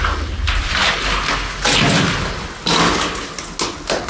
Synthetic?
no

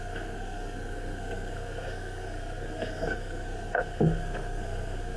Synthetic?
yes